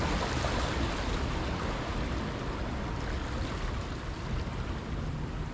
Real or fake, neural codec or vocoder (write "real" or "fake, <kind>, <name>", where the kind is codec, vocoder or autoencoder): real